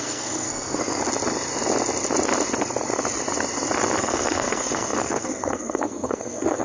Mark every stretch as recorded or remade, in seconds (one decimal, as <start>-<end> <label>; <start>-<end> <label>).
0.0-1.0 remade; 1.0-4.0 recorded; 4.0-6.6 remade